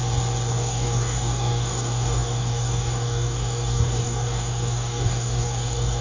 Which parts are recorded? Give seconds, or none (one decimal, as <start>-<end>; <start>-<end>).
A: 0.0-0.5

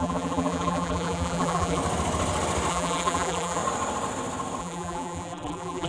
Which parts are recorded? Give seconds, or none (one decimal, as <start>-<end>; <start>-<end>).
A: 1.8-2.7; 3.6-4.6

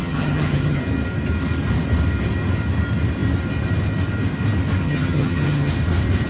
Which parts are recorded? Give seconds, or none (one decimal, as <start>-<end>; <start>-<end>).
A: 0.8-4.8; 5.7-6.3

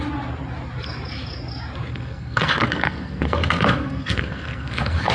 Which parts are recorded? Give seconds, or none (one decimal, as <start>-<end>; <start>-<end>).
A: 0.0-1.9

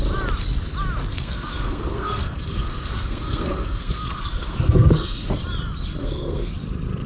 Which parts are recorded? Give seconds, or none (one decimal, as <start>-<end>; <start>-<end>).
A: 0.0-1.1; 5.4-6.0; 6.5-7.1

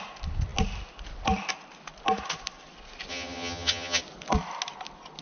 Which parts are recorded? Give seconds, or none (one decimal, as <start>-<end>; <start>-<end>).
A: 0.0-3.1; 4.0-5.2

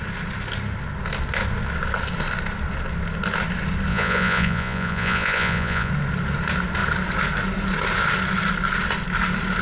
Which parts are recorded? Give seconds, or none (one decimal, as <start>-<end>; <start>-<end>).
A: 0.0-3.9; 5.9-9.6